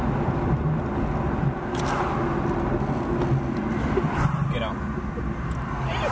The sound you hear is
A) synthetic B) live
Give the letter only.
B